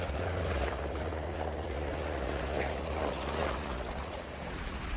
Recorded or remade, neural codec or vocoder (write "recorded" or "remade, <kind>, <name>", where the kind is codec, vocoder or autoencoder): remade, vocoder, Vocos